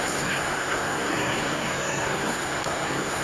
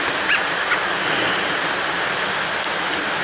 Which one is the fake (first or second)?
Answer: first